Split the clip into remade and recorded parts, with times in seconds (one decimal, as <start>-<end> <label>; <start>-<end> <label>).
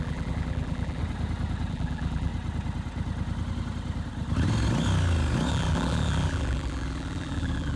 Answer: 0.0-1.0 remade; 1.0-1.7 recorded; 1.7-2.3 remade; 2.3-5.5 recorded; 5.5-7.8 remade